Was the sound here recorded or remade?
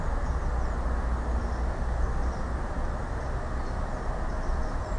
recorded